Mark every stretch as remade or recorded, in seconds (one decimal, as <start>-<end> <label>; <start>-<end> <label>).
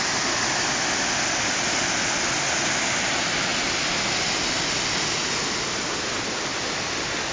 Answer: 0.0-7.3 recorded